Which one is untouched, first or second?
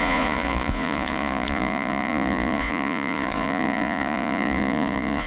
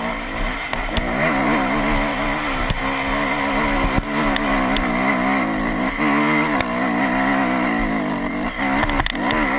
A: second